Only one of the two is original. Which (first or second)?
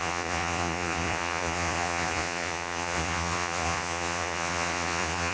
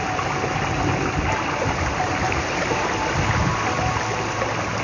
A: second